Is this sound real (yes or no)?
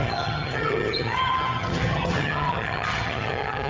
no